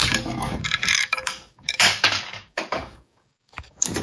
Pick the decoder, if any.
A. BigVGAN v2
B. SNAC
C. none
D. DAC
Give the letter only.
D